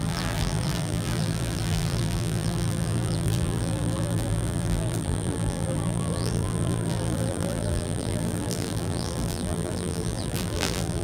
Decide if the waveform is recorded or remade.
remade